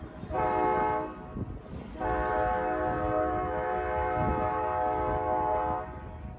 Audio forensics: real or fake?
real